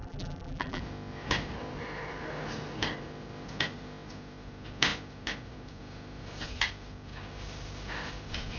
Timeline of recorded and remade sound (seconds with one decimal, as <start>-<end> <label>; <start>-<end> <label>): 0.0-0.8 remade; 0.8-8.6 recorded